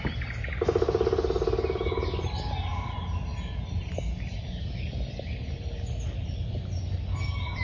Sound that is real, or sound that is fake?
real